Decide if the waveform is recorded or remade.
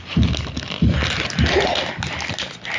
recorded